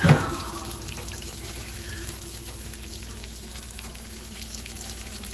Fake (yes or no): yes